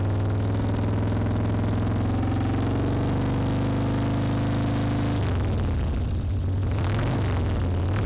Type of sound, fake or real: real